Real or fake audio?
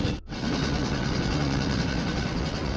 fake